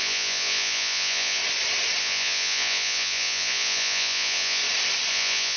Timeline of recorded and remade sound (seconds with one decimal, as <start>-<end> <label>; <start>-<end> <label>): 0.0-1.4 remade; 1.4-2.0 recorded; 2.0-4.6 remade; 4.6-5.1 recorded; 5.1-5.6 remade